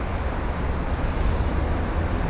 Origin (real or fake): real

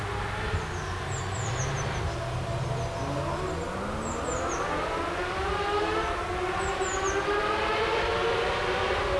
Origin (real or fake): real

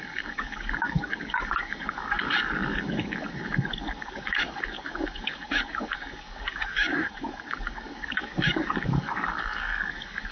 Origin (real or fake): fake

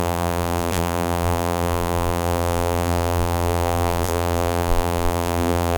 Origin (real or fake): fake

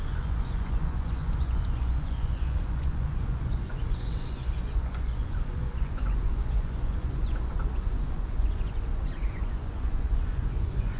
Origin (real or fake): fake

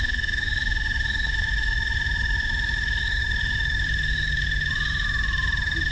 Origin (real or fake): fake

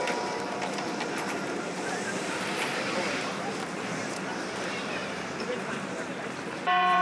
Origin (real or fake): fake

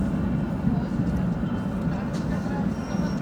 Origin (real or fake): real